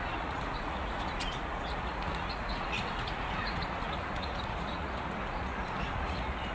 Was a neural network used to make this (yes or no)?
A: yes